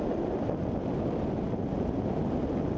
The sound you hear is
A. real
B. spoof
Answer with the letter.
A